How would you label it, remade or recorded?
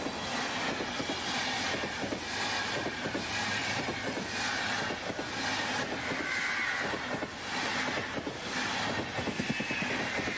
recorded